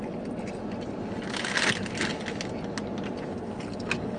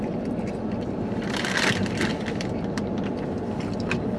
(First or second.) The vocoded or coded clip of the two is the second